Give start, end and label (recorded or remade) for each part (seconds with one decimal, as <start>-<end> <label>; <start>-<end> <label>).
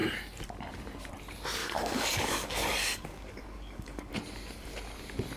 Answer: 0.0-1.6 recorded; 1.6-4.1 remade; 4.1-5.4 recorded